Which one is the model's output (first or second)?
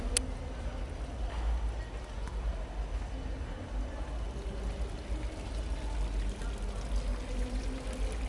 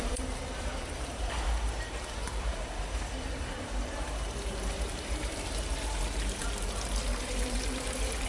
second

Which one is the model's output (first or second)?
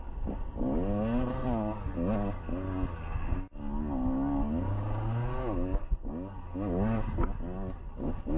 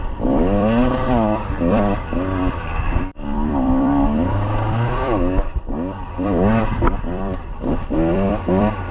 second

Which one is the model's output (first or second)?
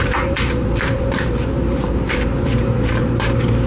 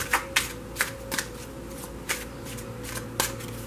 first